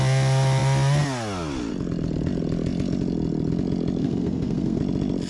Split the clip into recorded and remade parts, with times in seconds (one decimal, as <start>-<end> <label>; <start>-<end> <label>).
0.0-4.0 recorded; 4.0-4.8 remade; 4.8-5.3 recorded